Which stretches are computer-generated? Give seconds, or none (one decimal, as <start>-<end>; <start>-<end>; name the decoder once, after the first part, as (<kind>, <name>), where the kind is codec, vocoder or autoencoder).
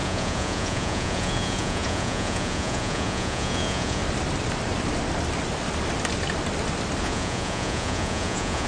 0.0-4.0 (vocoder, Vocos); 7.0-8.7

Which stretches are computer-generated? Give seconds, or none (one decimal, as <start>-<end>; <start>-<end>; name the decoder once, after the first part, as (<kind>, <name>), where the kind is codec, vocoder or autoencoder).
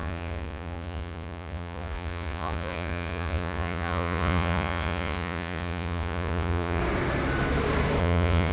0.0-6.8 (vocoder, Vocos); 8.0-8.5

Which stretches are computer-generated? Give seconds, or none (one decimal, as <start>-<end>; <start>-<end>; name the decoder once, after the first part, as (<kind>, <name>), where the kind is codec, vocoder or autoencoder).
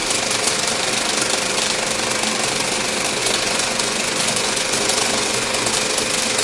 3.2-5.7 (vocoder, Vocos)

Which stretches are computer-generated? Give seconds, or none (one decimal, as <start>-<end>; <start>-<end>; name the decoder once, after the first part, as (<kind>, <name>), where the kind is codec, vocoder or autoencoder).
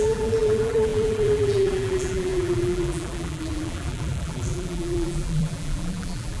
0.0-6.4 (vocoder, BigVGAN v2)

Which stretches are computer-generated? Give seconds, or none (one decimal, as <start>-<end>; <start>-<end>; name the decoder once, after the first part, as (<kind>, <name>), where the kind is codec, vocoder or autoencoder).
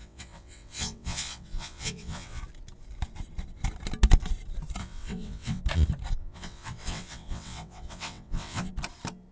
0.0-2.4 (vocoder, WaveNeXt); 4.8-5.6; 6.2-8.7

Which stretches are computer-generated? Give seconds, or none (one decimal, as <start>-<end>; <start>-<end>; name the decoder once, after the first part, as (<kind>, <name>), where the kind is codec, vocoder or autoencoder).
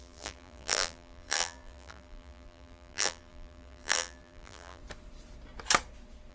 0.0-4.8 (vocoder, BigVGAN v2)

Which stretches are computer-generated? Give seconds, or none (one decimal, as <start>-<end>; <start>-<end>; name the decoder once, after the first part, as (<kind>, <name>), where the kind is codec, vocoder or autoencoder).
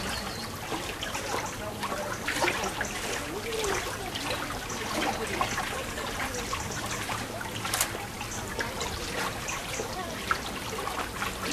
none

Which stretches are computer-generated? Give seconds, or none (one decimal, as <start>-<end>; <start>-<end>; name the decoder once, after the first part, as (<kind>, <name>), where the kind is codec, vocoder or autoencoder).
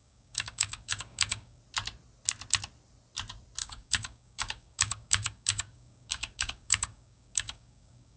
0.0-1.6 (codec, DAC); 3.6-8.2